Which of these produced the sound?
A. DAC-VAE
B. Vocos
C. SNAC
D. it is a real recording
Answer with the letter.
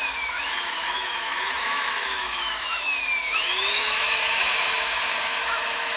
A